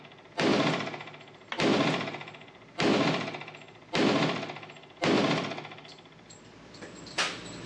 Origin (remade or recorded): recorded